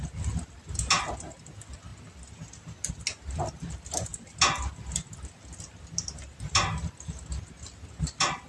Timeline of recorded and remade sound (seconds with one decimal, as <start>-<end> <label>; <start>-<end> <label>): 0.0-8.5 recorded